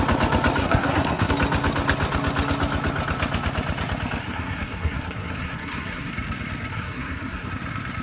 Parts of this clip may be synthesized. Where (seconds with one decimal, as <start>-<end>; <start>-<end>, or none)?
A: 0.6-1.3; 4.2-6.1; 6.7-7.5